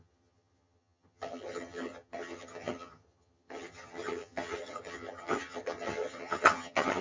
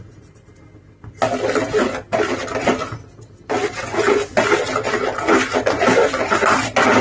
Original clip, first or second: second